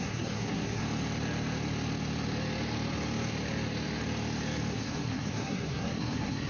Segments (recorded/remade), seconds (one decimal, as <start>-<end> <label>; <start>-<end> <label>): 0.0-0.8 remade; 0.8-4.7 recorded; 4.7-6.5 remade